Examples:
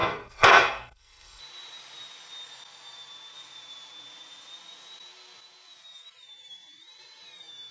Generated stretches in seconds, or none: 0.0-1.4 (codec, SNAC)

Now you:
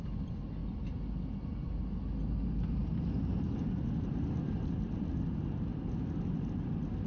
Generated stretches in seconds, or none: none